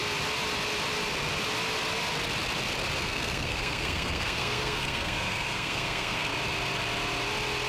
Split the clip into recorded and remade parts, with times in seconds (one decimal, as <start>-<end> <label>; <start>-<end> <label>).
0.0-3.0 recorded; 3.0-6.3 remade; 6.3-7.7 recorded